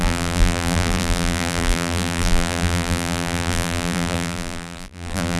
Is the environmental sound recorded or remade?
remade